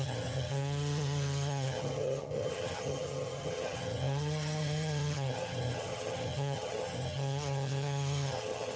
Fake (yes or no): yes